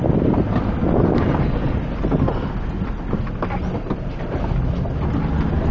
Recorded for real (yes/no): yes